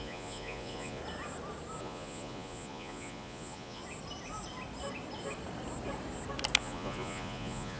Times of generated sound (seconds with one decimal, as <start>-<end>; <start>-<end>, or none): 0.0-1.0; 1.8-3.8; 6.6-7.8